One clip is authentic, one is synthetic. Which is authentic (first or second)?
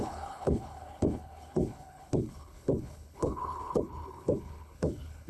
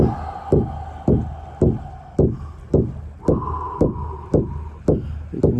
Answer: second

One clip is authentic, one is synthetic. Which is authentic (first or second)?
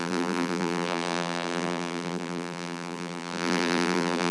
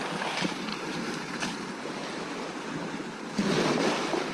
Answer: second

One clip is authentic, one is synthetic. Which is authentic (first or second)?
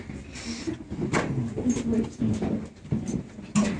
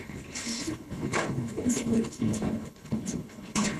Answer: first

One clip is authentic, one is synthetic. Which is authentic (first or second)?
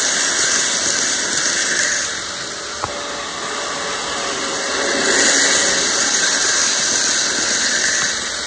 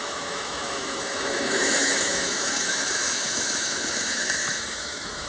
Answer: first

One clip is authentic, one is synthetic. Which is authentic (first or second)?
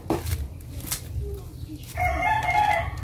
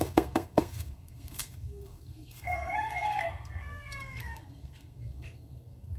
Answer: first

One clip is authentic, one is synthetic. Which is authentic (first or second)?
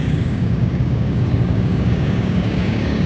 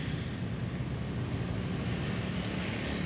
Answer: second